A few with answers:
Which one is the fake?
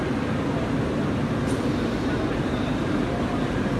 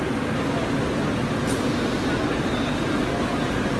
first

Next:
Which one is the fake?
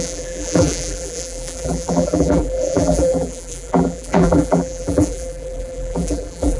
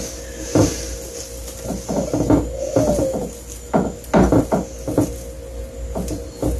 first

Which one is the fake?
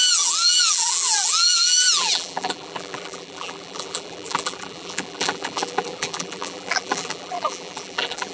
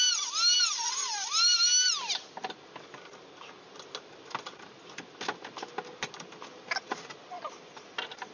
first